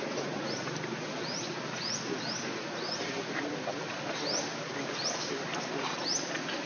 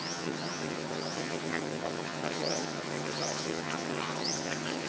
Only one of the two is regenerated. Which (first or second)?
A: second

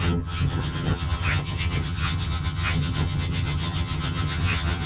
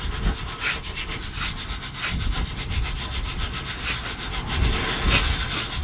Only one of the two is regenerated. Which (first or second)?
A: first